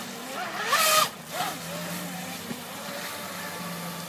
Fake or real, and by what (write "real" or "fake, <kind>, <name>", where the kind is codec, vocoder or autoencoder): real